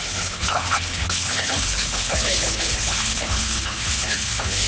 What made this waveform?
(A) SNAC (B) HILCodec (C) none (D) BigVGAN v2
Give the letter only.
B